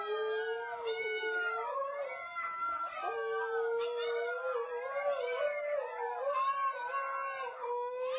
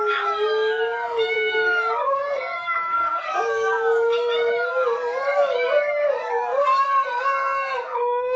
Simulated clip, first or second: second